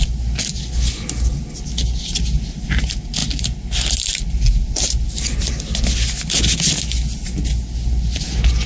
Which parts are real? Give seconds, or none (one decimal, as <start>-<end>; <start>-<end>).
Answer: 0.0-8.7